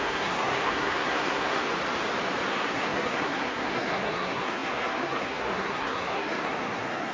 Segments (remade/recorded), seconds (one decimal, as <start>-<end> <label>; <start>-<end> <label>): 0.0-1.6 remade; 1.6-2.5 recorded; 2.5-7.1 remade